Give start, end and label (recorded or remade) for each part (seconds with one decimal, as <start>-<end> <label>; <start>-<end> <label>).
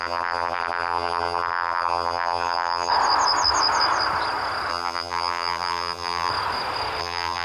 0.0-2.9 remade; 2.9-4.7 recorded; 4.7-6.3 remade; 6.3-7.0 recorded; 7.0-7.4 remade